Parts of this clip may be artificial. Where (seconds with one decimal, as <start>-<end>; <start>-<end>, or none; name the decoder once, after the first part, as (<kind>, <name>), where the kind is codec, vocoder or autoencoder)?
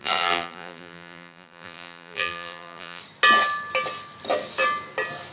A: 0.0-3.0 (vocoder, BigVGAN v2)